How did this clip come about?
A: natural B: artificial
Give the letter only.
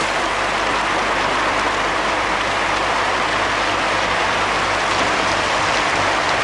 A